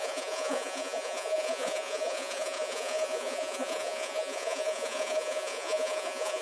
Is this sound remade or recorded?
remade